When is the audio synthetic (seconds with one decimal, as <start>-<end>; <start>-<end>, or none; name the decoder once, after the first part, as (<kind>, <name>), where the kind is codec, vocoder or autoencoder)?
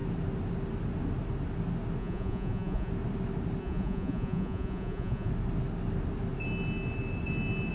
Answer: 2.0-2.9 (vocoder, Vocos); 3.6-5.3